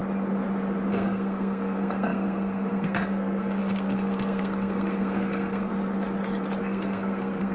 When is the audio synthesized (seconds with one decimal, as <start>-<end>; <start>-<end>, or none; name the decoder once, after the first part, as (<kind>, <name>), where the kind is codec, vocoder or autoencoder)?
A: 0.9-5.7 (codec, SNAC); 6.6-7.5